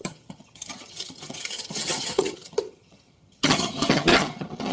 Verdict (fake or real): fake